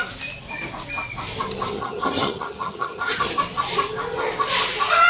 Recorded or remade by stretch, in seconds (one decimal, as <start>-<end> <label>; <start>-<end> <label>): 0.0-1.7 recorded; 1.7-3.3 remade; 3.3-5.1 recorded